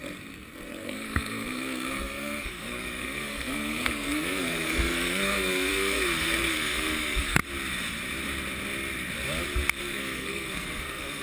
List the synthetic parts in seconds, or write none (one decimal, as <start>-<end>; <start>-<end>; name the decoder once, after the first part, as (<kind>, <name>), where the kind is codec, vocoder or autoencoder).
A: 0.0-7.4 (codec, SNAC); 9.8-11.2